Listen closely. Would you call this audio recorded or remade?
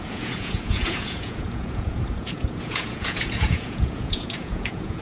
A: remade